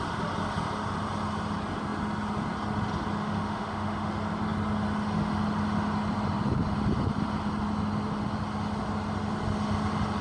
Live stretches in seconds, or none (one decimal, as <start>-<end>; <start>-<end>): 0.0-3.2; 4.1-10.2